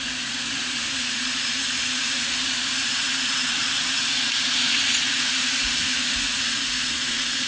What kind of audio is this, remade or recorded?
remade